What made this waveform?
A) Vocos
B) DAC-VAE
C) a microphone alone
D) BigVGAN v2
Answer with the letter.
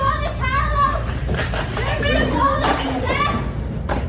D